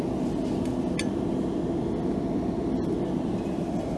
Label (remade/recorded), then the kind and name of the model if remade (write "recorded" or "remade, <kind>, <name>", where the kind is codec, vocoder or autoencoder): recorded